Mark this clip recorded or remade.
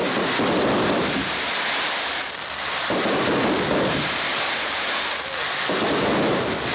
recorded